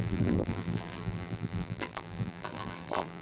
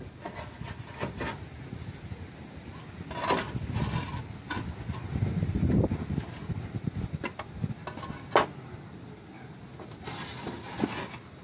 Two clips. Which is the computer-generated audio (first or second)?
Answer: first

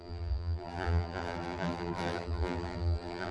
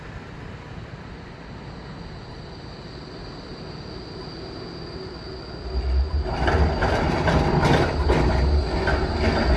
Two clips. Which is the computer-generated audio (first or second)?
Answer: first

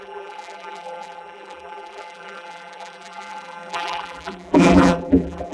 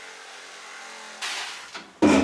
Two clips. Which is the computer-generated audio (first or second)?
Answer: first